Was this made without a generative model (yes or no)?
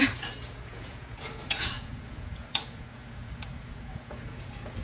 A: no